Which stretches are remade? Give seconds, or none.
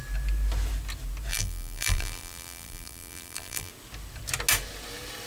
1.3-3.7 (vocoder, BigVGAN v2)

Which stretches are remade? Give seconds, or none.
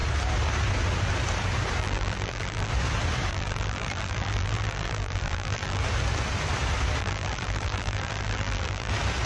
1.8-2.7 (vocoder, BigVGAN v2); 3.3-5.8; 7.0-8.9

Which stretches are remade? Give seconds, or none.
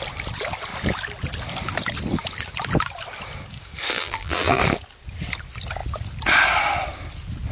3.9-4.6 (vocoder, BigVGAN v2)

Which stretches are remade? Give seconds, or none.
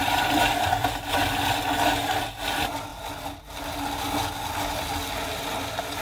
0.8-1.3 (vocoder, BigVGAN v2)